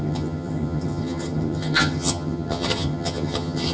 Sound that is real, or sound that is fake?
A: fake